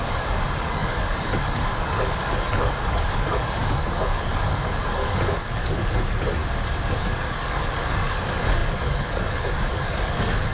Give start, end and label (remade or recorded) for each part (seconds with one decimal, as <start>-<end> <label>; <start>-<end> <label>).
0.0-6.4 remade; 6.4-6.9 recorded; 6.9-10.5 remade